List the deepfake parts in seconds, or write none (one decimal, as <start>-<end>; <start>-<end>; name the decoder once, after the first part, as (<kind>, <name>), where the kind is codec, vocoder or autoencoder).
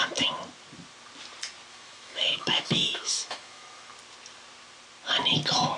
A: 1.7-3.9 (autoencoder, DAC-VAE)